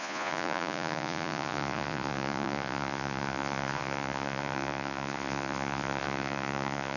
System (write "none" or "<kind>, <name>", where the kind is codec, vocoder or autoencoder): vocoder, Vocos